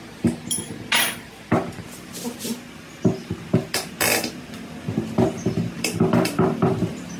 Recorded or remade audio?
recorded